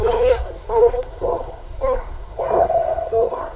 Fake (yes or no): yes